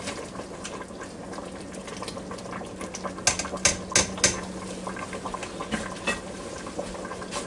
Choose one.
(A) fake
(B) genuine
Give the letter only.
B